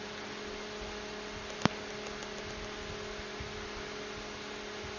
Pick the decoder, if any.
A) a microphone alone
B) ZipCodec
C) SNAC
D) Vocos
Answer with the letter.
A